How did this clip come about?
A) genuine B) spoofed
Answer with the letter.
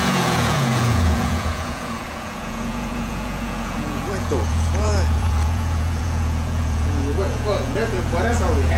B